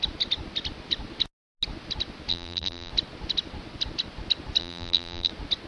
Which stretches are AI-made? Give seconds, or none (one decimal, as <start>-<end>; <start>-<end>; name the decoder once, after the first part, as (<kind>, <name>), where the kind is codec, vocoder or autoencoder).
2.3-2.9 (vocoder, BigVGAN v2); 4.6-5.3